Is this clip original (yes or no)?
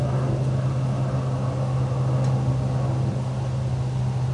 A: yes